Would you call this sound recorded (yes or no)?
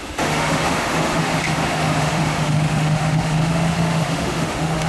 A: no